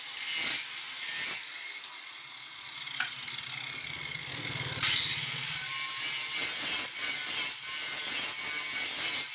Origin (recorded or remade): recorded